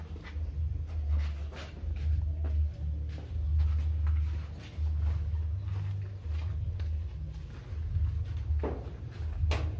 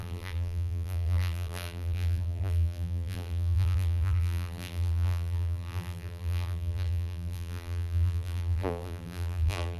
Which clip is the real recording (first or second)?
first